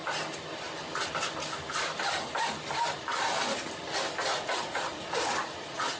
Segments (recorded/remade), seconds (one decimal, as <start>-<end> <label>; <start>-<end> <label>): 0.0-4.3 recorded; 4.3-6.0 remade